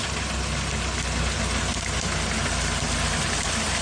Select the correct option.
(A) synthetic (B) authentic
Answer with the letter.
B